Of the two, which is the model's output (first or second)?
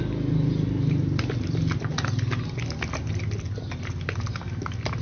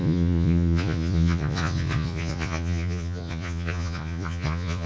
second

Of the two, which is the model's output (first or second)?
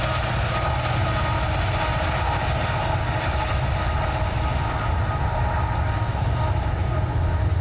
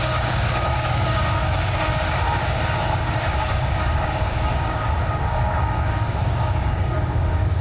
second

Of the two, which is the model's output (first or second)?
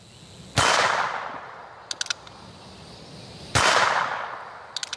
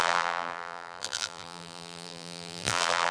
second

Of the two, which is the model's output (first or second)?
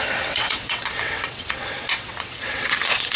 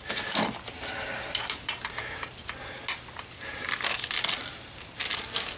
first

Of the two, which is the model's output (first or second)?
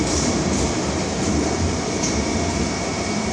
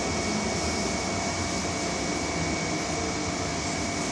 first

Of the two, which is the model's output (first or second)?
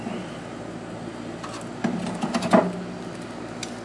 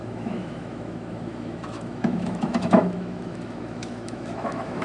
second